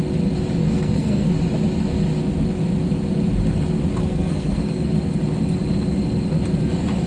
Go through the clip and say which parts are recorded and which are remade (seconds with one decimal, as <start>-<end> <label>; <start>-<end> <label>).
0.0-0.6 recorded; 0.6-1.3 remade; 1.3-4.0 recorded; 4.0-4.9 remade; 4.9-7.1 recorded